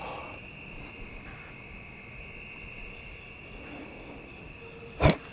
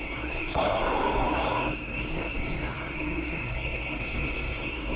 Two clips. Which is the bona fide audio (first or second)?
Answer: first